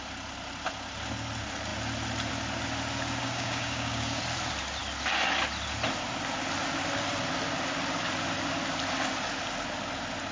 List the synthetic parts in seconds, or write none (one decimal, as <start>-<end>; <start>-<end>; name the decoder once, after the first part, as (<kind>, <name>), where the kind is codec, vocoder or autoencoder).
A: 3.2-4.2 (codec, DAC)